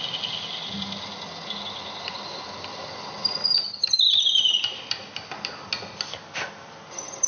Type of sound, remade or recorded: recorded